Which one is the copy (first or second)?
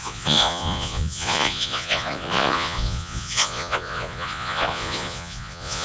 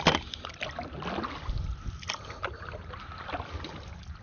first